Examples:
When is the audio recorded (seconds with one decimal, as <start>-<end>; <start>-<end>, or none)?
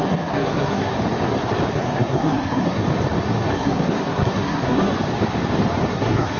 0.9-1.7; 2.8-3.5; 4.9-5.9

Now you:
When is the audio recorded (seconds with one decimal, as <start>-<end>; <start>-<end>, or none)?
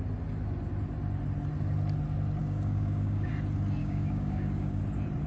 0.0-2.4; 3.3-3.8; 4.8-5.3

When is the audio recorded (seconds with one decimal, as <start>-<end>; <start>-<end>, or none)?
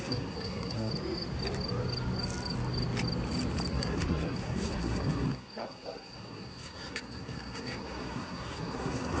0.9-3.7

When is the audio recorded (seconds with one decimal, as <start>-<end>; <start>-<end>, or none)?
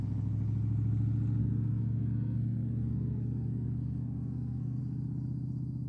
0.0-1.4; 4.8-5.9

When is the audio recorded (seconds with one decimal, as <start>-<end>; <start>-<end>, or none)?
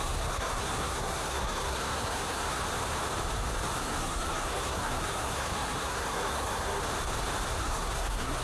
2.6-3.8; 6.8-7.6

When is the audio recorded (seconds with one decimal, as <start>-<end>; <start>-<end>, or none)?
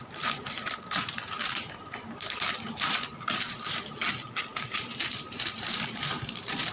4.0-4.5